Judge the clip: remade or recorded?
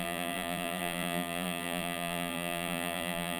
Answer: remade